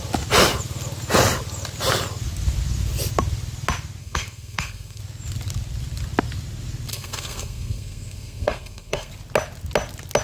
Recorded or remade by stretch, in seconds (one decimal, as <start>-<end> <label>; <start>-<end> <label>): 0.0-4.0 recorded; 4.0-5.0 remade; 5.0-6.9 recorded; 6.9-9.1 remade; 9.1-10.2 recorded